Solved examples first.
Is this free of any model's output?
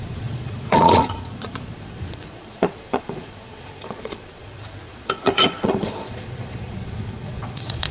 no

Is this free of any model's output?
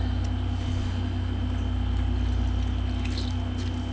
yes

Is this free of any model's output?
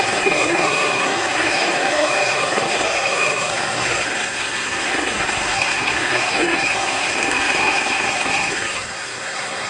no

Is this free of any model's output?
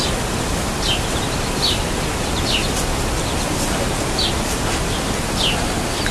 yes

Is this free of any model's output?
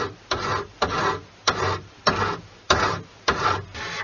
yes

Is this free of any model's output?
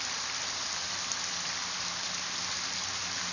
yes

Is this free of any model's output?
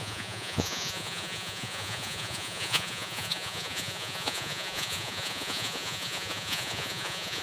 no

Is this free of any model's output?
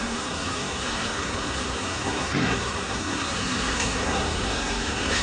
no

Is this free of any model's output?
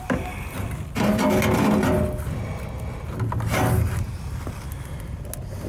yes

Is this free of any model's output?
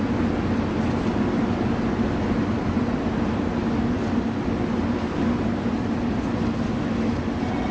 yes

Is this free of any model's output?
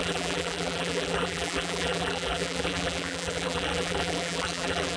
no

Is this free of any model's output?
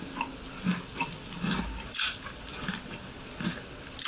yes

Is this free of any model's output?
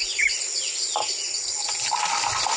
yes